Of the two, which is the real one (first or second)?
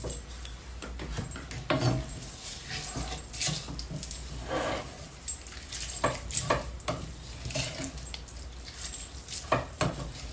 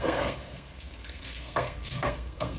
first